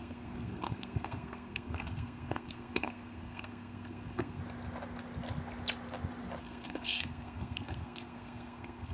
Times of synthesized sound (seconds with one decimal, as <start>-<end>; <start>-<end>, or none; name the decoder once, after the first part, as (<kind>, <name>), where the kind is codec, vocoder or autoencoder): 0.0-4.4 (codec, SNAC); 6.4-8.9